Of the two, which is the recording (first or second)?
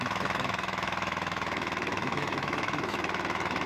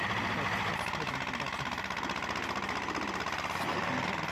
second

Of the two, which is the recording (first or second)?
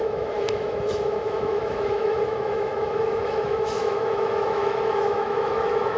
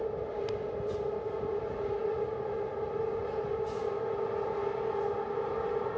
second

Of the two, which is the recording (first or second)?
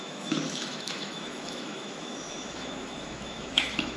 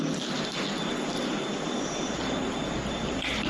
second